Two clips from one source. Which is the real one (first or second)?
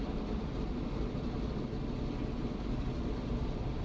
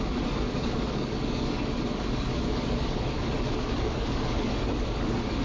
first